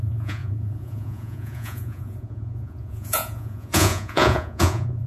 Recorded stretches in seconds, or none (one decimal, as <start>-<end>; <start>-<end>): none